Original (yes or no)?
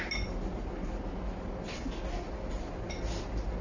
yes